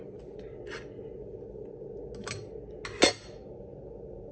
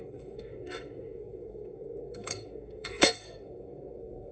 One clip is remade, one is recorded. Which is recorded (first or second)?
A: first